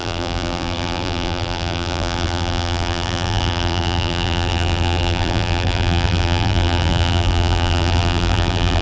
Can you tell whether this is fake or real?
fake